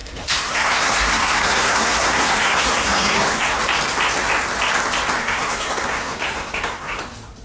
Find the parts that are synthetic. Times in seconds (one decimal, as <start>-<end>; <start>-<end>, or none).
0.0-3.6; 5.2-7.0